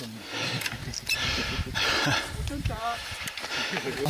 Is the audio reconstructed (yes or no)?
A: yes